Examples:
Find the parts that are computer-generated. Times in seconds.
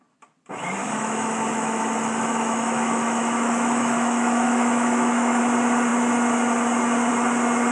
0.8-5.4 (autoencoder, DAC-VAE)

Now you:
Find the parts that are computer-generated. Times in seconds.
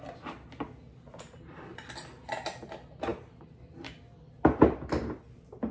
none